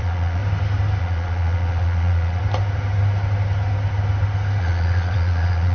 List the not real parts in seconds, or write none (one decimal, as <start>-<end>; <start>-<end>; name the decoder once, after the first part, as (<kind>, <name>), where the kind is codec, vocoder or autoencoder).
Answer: 0.0-0.4 (vocoder, Vocos); 1.0-2.4; 4.6-5.7